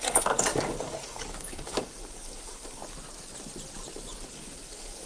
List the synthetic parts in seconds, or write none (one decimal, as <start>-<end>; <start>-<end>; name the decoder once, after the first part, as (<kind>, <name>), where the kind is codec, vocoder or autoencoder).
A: 0.0-2.8 (codec, DAC); 4.3-5.1